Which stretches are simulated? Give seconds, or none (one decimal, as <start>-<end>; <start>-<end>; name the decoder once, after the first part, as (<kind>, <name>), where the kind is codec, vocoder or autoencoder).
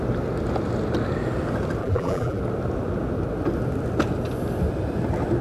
1.8-2.4 (vocoder, BigVGAN v2)